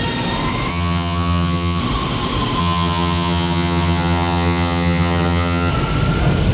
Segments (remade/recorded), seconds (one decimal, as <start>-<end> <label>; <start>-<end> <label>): 0.0-0.7 recorded; 0.7-1.8 remade; 1.8-2.6 recorded; 2.6-5.7 remade; 5.7-6.5 recorded